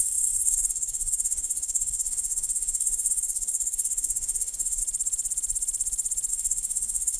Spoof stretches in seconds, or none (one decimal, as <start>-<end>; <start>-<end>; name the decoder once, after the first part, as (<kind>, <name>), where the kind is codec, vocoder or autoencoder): 0.0-4.8 (codec, DAC); 6.3-7.2